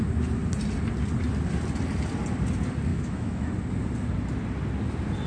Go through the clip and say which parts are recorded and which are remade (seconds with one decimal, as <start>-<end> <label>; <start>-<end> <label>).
0.0-2.9 recorded; 2.9-3.5 remade; 3.5-5.3 recorded